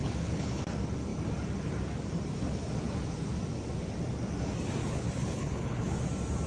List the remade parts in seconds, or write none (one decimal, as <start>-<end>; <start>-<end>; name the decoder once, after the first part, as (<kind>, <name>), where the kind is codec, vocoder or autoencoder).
0.0-0.6 (codec, HILCodec); 4.8-6.0